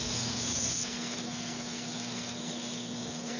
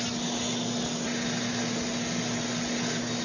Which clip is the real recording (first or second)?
second